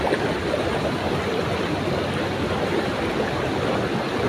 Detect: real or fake real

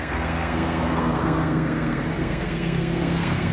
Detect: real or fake fake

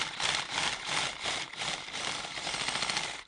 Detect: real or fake real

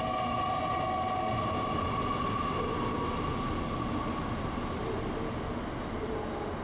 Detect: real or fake real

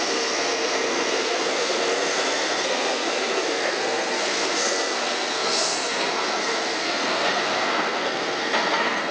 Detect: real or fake fake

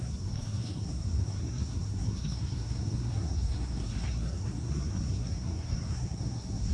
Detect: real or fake fake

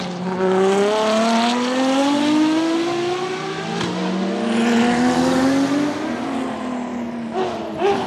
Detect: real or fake real